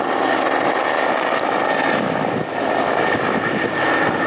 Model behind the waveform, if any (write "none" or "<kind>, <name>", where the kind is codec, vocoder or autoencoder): none